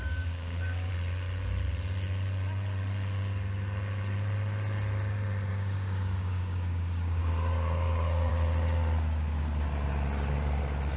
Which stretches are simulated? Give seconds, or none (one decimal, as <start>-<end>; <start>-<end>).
0.0-0.9; 5.5-8.3